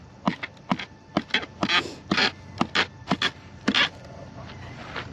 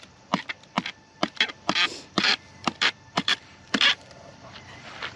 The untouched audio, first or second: first